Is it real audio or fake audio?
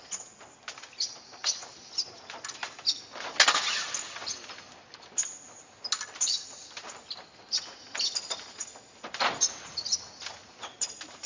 real